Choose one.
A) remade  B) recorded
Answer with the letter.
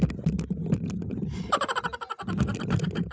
B